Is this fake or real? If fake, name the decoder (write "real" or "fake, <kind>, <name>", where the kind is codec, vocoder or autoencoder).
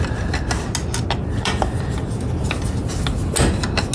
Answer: real